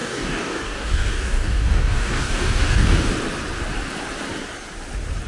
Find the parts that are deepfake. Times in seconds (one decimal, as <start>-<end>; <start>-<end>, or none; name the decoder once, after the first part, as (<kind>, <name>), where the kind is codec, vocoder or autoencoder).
0.0-3.1 (codec, DAC)